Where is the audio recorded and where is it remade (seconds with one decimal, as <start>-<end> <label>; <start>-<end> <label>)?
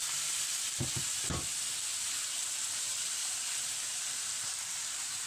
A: 0.0-1.9 recorded; 1.9-5.3 remade